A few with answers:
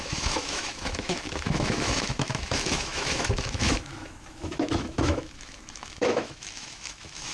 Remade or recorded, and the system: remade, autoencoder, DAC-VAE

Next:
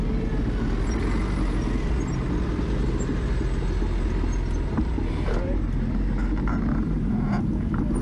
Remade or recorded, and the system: recorded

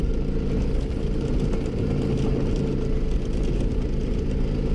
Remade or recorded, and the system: recorded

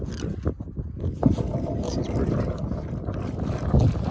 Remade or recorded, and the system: recorded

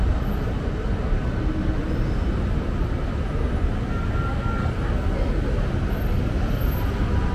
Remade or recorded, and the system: recorded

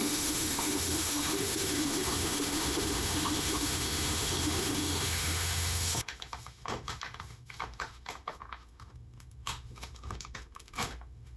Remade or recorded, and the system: remade, autoencoder, DAC-VAE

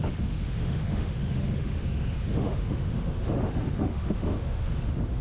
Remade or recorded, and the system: remade, autoencoder, DAC-VAE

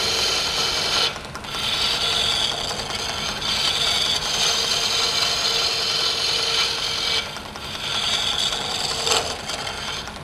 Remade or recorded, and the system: recorded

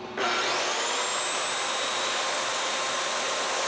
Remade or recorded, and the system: recorded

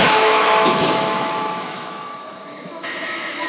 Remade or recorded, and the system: remade, autoencoder, DAC-VAE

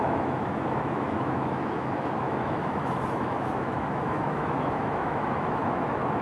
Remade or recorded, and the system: remade, autoencoder, DAC-VAE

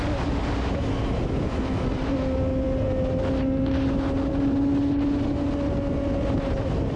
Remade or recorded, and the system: recorded